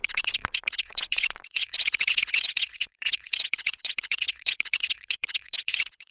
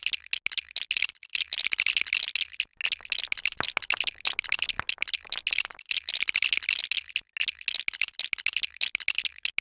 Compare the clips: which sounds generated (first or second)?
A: first